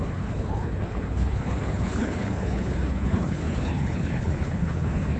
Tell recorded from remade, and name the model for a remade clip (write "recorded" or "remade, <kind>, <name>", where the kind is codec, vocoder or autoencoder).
remade, codec, HILCodec